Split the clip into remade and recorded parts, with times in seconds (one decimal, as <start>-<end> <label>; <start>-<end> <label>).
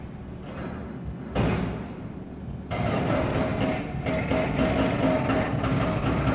0.0-6.3 recorded